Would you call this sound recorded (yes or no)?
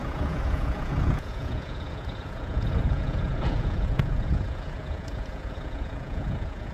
no